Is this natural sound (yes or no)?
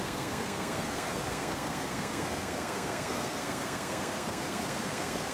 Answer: no